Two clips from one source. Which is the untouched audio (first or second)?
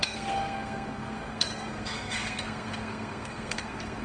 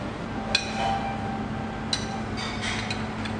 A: second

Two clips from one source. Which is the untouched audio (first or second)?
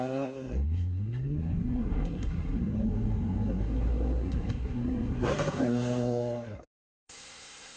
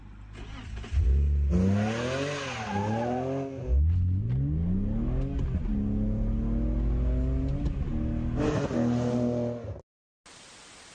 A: second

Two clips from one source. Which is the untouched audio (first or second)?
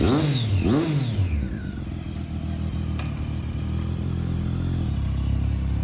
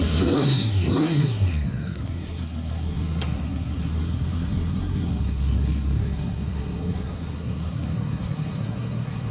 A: first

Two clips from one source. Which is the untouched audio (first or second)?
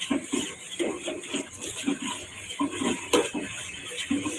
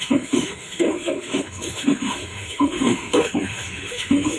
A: first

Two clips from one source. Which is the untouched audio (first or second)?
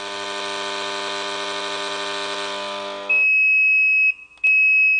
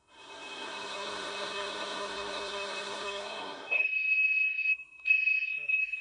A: first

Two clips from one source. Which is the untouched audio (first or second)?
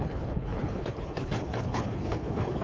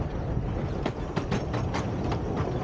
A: second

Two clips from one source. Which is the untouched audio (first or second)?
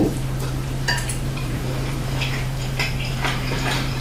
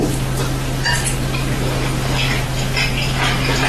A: second